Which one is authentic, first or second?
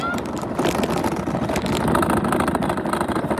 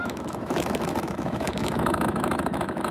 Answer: first